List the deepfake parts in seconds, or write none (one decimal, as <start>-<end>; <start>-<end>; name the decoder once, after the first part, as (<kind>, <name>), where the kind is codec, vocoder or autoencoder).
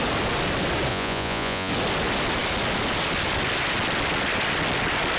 0.9-1.7 (vocoder, Vocos)